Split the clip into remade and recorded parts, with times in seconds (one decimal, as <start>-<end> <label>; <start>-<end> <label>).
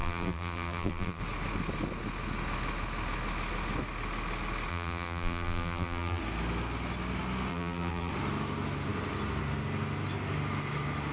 0.0-1.2 remade; 1.2-4.7 recorded; 4.7-6.2 remade; 6.2-7.5 recorded; 7.5-8.1 remade; 8.1-11.1 recorded